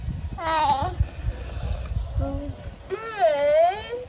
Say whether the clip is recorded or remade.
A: recorded